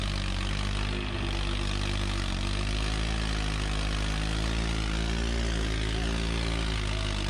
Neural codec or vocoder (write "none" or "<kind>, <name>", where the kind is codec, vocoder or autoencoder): none